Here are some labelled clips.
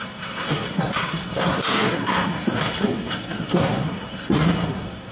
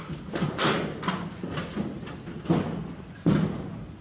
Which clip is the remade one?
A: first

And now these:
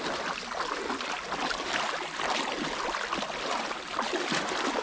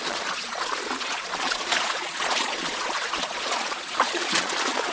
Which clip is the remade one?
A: second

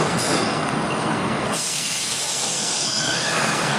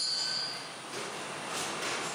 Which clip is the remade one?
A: first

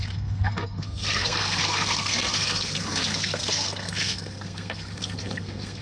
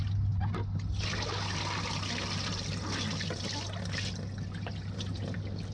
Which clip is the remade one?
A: first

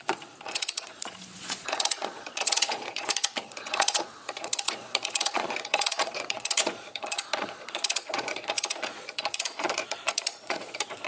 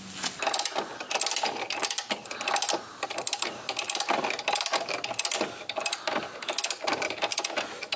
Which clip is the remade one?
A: first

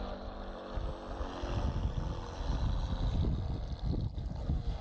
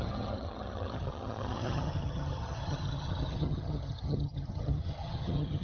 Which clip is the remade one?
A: second